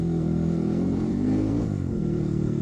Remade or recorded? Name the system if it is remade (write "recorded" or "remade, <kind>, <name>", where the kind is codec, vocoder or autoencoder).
remade, codec, SNAC